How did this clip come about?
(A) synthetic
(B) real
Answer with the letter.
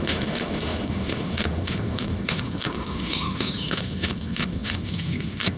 A